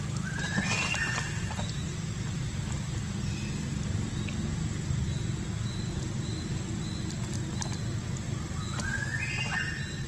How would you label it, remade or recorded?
recorded